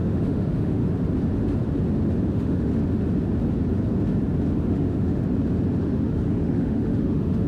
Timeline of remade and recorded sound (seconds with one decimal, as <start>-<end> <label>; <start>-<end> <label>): 0.0-0.8 remade; 0.8-2.3 recorded; 2.3-2.7 remade; 2.7-4.6 recorded; 4.6-5.2 remade; 5.2-5.8 recorded; 5.8-7.5 remade